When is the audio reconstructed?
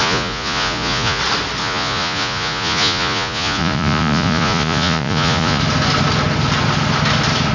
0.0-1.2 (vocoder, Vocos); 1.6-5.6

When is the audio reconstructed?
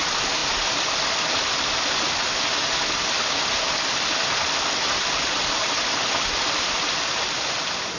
none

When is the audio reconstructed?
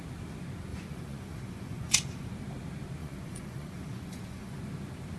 0.7-2.3 (vocoder, Vocos); 3.0-4.6